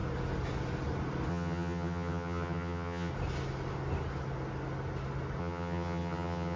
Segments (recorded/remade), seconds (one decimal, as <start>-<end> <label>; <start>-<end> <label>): 0.0-1.3 recorded; 1.3-3.1 remade; 3.1-5.4 recorded; 5.4-6.6 remade